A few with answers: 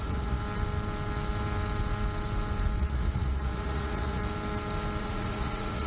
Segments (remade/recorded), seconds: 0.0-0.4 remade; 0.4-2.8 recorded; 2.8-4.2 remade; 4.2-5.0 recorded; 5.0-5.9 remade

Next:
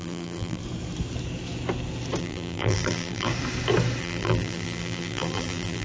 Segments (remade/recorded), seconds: 0.0-0.6 remade; 0.6-2.2 recorded; 2.2-3.3 remade; 3.3-4.0 recorded; 4.0-5.8 remade

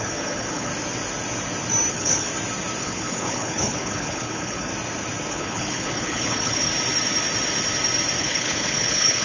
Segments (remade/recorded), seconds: 0.0-0.7 remade; 0.7-1.9 recorded; 1.9-2.3 remade; 2.3-2.8 recorded; 2.8-4.7 remade; 4.7-5.3 recorded; 5.3-6.7 remade; 6.7-8.2 recorded; 8.2-9.2 remade

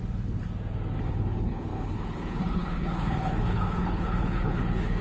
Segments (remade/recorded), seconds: 0.0-1.0 recorded; 1.0-5.0 remade